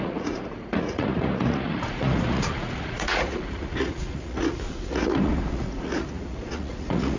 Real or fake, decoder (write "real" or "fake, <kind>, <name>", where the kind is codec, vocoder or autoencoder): fake, vocoder, Vocos